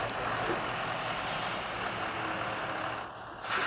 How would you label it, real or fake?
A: real